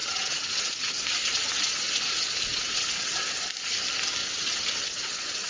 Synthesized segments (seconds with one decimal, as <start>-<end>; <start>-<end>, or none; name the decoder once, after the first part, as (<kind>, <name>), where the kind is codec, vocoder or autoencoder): 0.0-3.3 (vocoder, WaveNeXt); 4.2-5.5